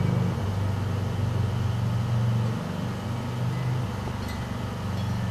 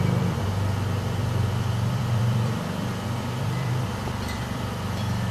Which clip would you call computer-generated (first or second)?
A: second